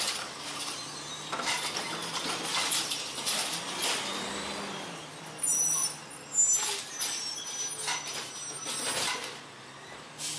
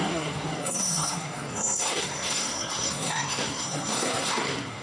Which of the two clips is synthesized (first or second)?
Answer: second